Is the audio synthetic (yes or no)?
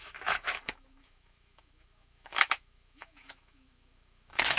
yes